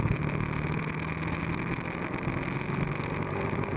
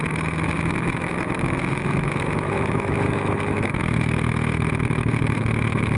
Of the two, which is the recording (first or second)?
first